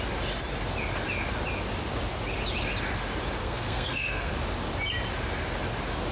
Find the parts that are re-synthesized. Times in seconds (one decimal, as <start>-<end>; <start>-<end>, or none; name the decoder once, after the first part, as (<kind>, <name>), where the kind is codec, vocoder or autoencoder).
3.4-4.3 (codec, SNAC)